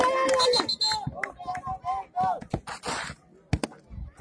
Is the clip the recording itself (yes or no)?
yes